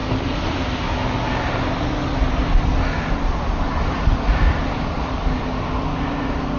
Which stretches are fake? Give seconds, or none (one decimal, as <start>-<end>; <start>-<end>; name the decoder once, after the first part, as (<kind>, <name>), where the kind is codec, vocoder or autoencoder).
none